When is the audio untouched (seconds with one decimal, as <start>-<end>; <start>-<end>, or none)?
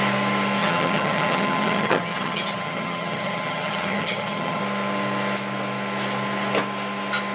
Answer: 0.0-0.6; 4.6-7.3